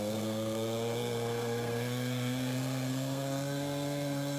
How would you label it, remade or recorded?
remade